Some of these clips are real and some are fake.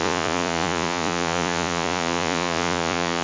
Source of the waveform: fake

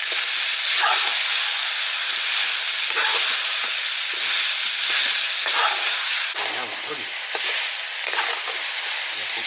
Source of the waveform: real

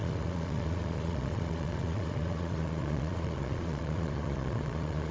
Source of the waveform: fake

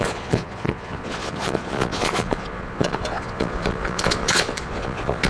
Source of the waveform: fake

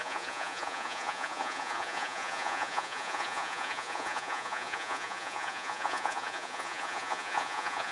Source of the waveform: fake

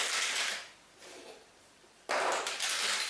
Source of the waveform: real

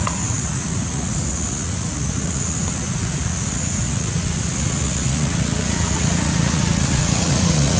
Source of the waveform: fake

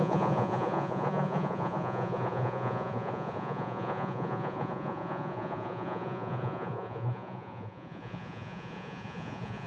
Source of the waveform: fake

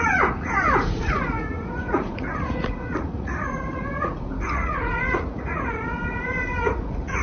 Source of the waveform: fake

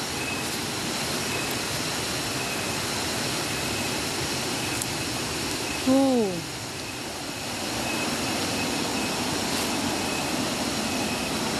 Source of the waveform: real